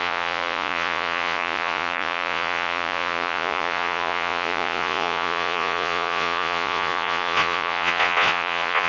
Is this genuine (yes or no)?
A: no